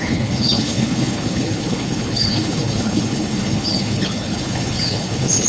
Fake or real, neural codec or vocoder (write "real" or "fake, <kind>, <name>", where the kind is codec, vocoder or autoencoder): fake, codec, HILCodec